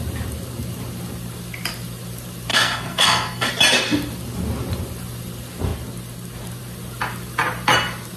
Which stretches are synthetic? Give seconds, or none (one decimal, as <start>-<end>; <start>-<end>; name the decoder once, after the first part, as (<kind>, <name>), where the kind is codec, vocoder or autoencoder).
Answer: 2.5-3.5 (codec, SNAC)